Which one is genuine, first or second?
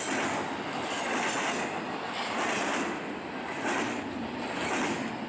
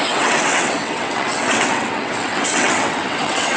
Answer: first